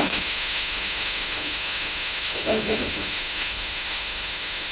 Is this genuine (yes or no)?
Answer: no